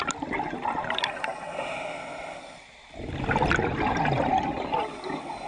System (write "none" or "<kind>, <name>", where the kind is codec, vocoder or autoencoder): none